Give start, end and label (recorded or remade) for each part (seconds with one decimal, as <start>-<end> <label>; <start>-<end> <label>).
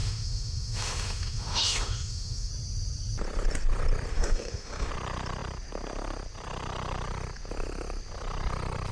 0.0-2.5 remade; 2.5-4.1 recorded; 4.1-4.9 remade; 4.9-8.9 recorded